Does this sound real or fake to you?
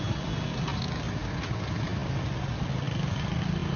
real